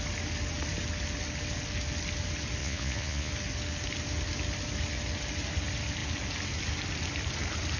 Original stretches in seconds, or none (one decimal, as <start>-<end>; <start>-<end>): 0.0-2.6; 3.3-7.8